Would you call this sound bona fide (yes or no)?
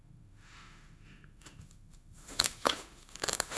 no